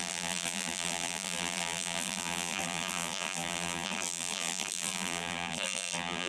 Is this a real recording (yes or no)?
no